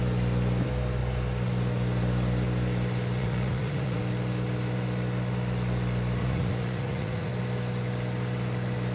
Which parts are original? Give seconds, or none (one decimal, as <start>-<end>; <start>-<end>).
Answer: 0.0-3.2; 4.0-6.2; 7.3-8.9